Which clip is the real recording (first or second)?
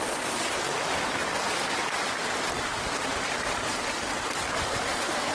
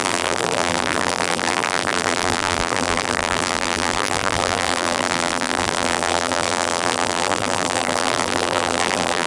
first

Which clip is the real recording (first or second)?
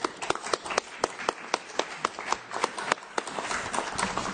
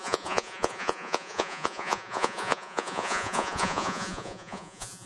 first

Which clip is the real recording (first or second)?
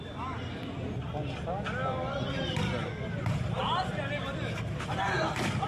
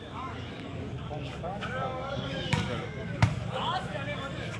first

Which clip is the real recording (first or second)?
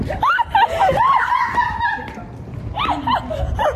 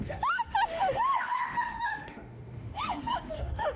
first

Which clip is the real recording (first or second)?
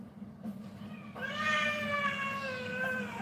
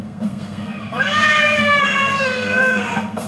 first